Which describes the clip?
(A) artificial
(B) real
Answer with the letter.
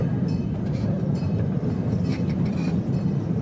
B